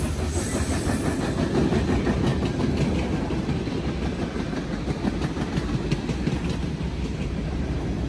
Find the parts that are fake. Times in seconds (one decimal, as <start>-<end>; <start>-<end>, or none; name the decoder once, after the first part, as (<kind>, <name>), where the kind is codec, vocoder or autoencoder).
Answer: none